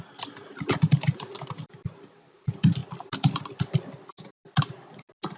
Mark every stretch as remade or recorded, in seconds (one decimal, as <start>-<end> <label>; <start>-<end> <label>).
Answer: 0.0-5.4 recorded